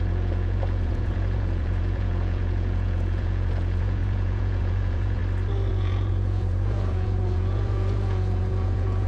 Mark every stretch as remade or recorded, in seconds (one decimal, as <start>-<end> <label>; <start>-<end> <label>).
0.0-5.2 remade; 5.2-5.7 recorded; 5.7-9.1 remade